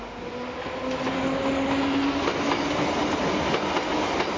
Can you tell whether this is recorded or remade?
recorded